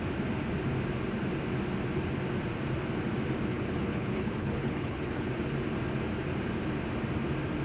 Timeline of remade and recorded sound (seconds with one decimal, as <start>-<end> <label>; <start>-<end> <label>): 0.0-3.5 recorded; 3.5-5.3 remade; 5.3-7.6 recorded